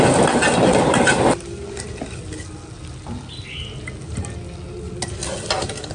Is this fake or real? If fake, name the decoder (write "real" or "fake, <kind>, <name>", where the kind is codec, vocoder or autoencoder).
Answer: real